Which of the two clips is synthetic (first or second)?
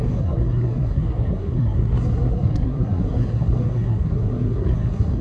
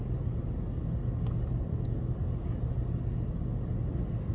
first